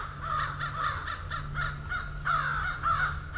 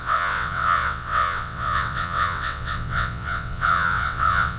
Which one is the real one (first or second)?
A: first